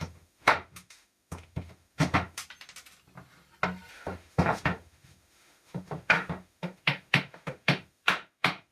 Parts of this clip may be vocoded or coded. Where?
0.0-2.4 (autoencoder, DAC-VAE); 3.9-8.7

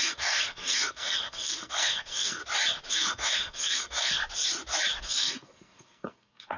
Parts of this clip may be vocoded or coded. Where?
0.0-2.4 (codec, SNAC); 2.9-4.2; 5.0-6.6